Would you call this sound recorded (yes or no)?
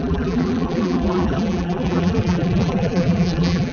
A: no